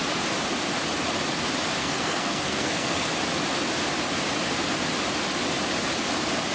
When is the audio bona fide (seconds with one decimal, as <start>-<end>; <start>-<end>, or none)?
0.0-1.8; 3.1-6.5

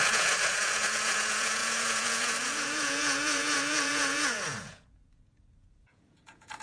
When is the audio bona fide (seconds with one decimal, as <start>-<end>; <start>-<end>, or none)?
none

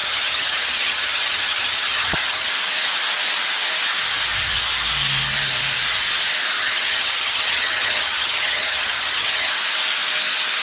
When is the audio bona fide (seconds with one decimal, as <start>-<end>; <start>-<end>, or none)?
2.5-6.6; 9.5-10.6